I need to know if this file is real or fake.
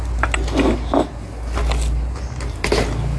real